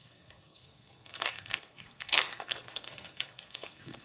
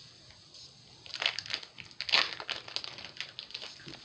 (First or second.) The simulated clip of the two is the first